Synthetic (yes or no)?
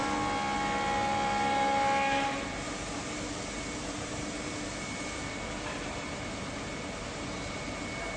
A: no